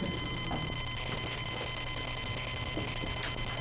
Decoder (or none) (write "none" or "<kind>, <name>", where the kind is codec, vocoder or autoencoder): none